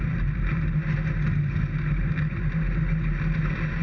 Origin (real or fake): real